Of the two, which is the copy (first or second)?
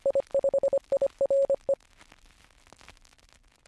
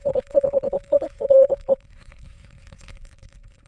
second